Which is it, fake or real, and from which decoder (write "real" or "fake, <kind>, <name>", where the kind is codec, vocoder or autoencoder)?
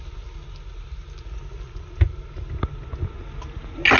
real